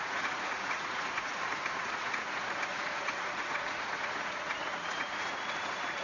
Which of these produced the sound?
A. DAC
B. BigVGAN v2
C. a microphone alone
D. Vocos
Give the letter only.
D